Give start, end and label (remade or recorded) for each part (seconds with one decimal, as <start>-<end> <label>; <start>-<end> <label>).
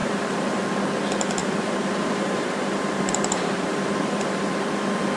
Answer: 0.0-0.6 remade; 0.6-1.4 recorded; 1.4-4.5 remade; 4.5-5.2 recorded